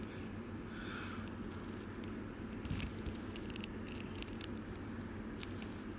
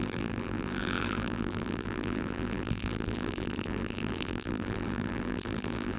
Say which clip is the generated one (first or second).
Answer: second